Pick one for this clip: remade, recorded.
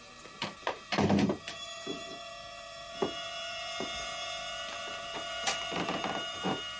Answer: remade